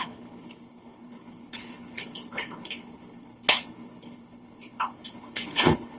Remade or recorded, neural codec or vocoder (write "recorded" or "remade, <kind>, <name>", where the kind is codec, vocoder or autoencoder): remade, codec, HILCodec